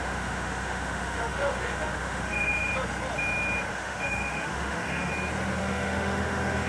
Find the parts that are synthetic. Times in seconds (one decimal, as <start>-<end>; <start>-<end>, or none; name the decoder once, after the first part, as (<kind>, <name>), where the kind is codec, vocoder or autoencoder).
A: 0.0-2.7 (autoencoder, DAC-VAE); 3.7-5.1; 5.6-6.7